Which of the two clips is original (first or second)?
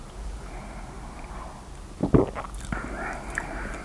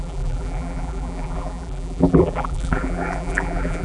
first